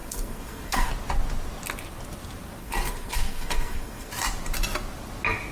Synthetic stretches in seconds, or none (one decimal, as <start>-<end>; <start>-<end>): 0.0-0.9; 2.6-4.1